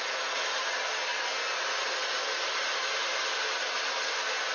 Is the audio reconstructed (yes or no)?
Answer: no